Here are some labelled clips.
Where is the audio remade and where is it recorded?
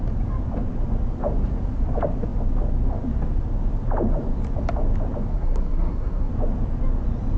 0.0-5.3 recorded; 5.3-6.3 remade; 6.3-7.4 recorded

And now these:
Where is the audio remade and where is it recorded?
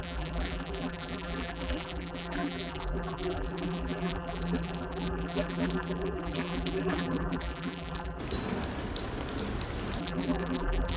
0.0-8.2 remade; 8.2-10.0 recorded; 10.0-11.0 remade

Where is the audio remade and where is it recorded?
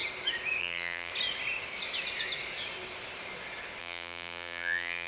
0.0-0.6 recorded; 0.6-1.1 remade; 1.1-3.8 recorded; 3.8-5.1 remade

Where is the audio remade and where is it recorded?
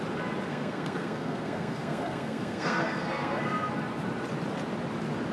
0.0-0.5 recorded; 0.5-3.7 remade; 3.7-5.3 recorded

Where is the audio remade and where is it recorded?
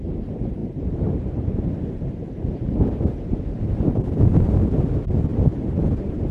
0.0-0.6 recorded; 0.6-4.2 remade; 4.2-6.3 recorded